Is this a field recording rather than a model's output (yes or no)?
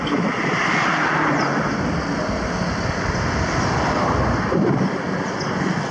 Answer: yes